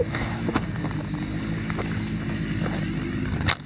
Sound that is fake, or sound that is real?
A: real